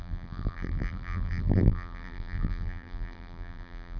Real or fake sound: fake